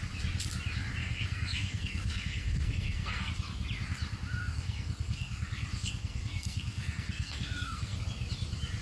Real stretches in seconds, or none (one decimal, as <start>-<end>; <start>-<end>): 0.0-1.0; 3.3-4.4; 8.0-8.8